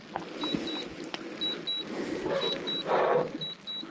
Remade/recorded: recorded